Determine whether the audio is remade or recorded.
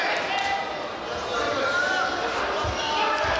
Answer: recorded